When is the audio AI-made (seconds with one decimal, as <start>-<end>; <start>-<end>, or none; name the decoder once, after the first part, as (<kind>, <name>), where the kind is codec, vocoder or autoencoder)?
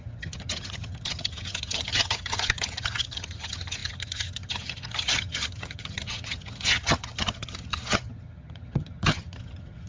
0.0-9.9 (vocoder, HiFi-GAN)